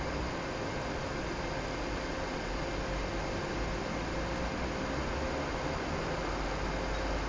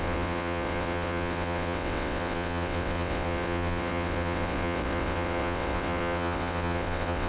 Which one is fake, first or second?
second